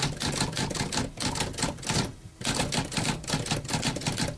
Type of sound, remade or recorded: recorded